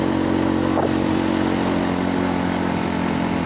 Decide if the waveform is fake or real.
real